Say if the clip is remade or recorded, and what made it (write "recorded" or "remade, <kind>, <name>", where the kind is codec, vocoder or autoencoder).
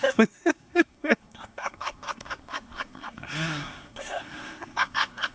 remade, codec, SNAC